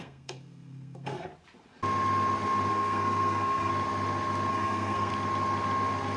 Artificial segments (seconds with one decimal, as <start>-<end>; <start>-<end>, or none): 0.0-1.3; 2.7-3.7; 4.5-5.1